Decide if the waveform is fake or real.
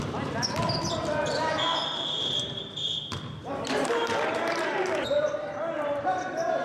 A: fake